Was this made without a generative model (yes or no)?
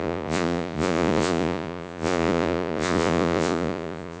no